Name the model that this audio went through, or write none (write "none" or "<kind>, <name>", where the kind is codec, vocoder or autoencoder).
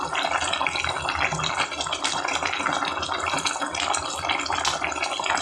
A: none